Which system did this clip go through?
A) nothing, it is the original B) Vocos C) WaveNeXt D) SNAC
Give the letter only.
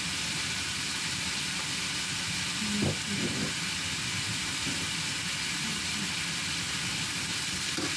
A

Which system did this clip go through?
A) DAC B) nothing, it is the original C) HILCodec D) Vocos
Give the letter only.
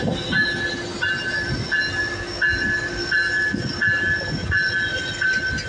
B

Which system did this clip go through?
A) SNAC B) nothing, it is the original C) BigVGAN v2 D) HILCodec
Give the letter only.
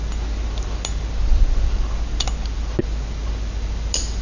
B